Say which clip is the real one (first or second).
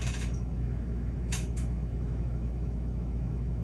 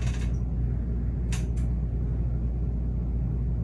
second